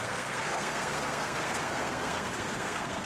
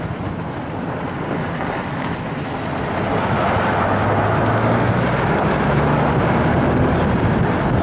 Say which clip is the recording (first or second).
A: second